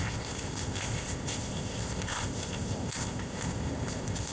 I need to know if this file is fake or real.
fake